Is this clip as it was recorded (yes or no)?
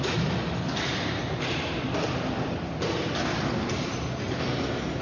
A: yes